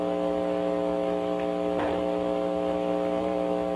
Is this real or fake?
real